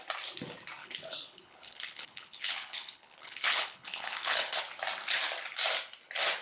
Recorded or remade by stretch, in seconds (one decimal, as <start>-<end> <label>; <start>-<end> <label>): 0.0-0.8 recorded; 0.8-4.6 remade; 4.6-6.4 recorded